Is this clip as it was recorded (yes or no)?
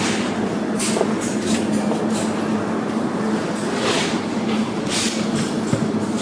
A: yes